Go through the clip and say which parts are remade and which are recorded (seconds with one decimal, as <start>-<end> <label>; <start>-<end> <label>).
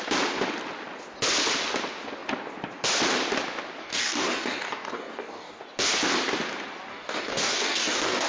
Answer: 0.0-3.8 recorded; 3.8-5.6 remade; 5.6-6.9 recorded; 6.9-8.3 remade